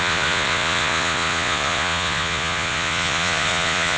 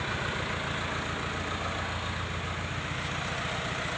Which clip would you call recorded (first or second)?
second